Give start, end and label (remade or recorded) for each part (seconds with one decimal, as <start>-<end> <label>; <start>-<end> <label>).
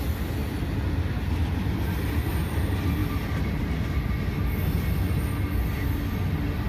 0.0-6.7 recorded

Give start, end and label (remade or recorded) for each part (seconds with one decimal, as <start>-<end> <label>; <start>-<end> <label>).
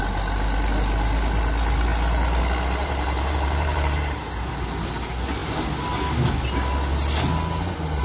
0.0-2.8 recorded; 2.8-4.5 remade; 4.5-8.0 recorded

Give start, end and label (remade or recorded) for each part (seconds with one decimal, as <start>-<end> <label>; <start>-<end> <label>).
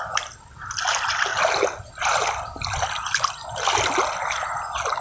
0.0-5.0 recorded